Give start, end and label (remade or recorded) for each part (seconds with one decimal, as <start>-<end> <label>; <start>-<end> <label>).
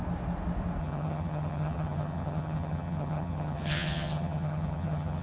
0.0-0.8 recorded; 0.8-5.2 remade